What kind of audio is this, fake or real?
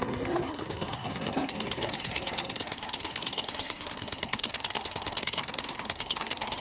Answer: fake